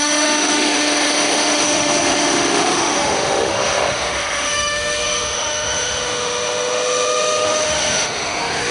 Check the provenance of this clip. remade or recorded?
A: remade